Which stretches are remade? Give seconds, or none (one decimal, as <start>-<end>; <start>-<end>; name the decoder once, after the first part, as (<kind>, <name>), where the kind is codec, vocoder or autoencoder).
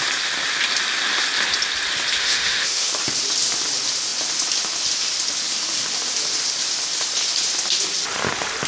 2.2-2.9 (autoencoder, DAC-VAE)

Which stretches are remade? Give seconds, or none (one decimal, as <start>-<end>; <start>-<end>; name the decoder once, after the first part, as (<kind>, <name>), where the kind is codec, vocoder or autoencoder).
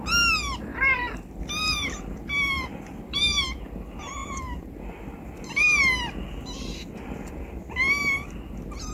none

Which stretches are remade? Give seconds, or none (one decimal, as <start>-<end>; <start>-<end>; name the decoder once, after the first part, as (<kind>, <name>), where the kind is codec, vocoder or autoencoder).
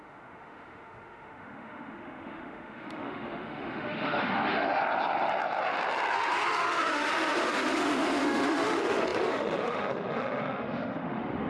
0.0-4.8 (autoencoder, DAC-VAE); 6.1-11.5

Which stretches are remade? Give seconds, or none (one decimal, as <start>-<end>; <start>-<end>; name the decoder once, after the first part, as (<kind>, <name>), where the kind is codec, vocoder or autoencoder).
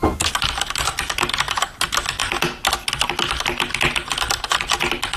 none